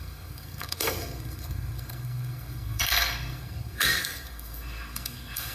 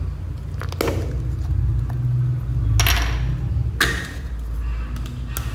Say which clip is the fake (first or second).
first